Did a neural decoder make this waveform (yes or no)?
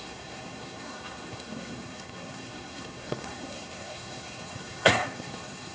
yes